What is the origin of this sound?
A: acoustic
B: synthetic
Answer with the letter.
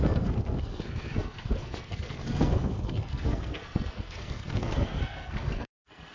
B